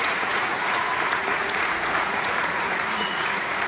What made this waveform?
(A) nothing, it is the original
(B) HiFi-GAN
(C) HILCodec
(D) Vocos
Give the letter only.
D